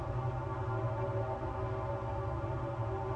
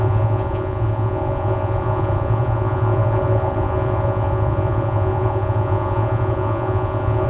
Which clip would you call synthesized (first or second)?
second